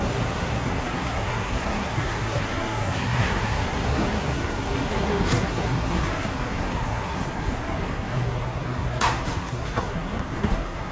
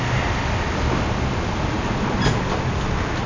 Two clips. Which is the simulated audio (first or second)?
first